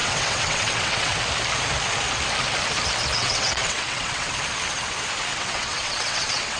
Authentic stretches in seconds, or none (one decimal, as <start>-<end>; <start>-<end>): 1.2-3.2; 4.3-5.3